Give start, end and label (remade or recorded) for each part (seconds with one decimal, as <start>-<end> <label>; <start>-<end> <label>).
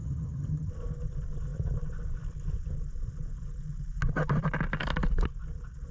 0.0-0.7 remade; 0.7-5.9 recorded